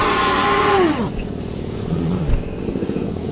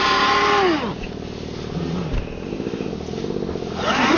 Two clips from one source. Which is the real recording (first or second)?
second